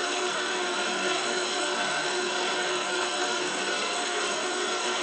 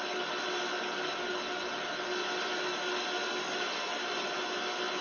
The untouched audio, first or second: second